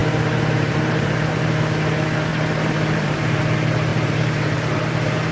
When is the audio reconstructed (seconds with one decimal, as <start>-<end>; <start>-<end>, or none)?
0.0-1.5; 2.3-3.4; 3.9-5.3